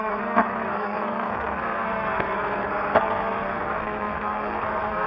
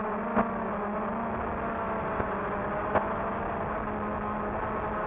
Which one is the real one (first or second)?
second